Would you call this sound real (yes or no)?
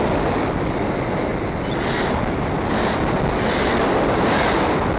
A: yes